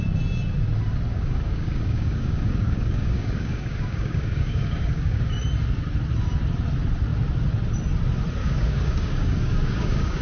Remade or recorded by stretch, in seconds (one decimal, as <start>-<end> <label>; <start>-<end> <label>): 0.0-1.1 recorded; 1.1-5.3 remade; 5.3-8.4 recorded; 8.4-10.2 remade